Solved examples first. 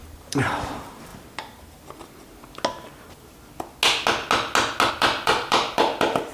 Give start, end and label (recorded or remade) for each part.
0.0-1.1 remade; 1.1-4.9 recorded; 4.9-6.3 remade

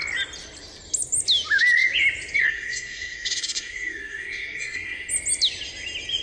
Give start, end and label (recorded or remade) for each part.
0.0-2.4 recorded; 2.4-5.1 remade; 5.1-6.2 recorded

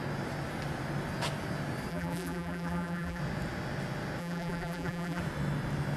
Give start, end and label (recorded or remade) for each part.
0.0-1.9 recorded; 1.9-3.2 remade; 3.2-4.2 recorded; 4.2-5.2 remade; 5.2-6.0 recorded